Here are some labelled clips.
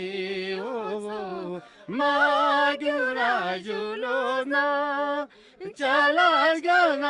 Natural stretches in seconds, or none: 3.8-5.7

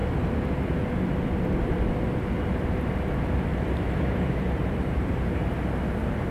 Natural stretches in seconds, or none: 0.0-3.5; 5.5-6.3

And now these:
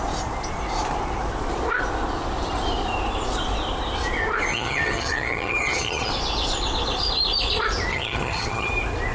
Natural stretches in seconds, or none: 0.0-4.5; 6.1-7.9; 8.7-9.1

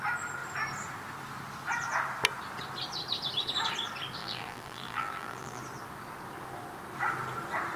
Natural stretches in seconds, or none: 0.0-4.2; 5.6-7.8